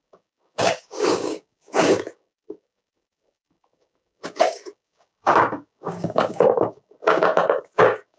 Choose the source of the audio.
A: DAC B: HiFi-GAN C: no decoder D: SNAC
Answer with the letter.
A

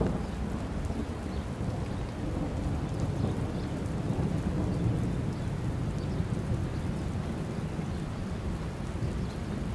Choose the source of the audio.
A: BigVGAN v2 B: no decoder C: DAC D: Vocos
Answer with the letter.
B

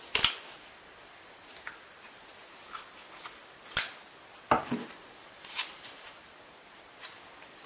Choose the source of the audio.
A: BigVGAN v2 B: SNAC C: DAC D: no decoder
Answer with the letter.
D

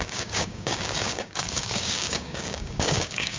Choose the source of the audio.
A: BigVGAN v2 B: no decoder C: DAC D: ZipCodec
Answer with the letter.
C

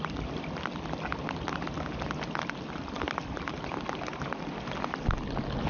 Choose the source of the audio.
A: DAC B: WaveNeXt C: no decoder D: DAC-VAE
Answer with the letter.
C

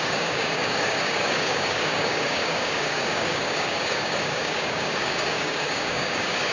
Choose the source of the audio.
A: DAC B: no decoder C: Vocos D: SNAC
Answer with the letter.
A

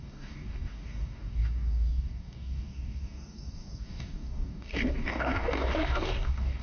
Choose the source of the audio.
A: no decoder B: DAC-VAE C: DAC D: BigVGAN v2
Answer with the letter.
C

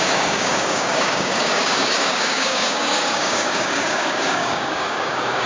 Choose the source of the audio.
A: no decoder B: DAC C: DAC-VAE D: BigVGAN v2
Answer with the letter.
B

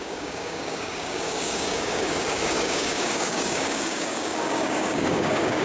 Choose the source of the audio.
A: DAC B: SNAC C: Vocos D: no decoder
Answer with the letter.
A